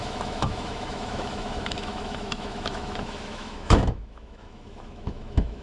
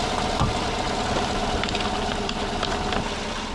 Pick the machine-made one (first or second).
first